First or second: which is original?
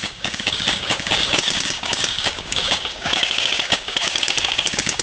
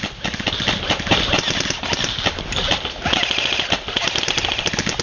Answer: second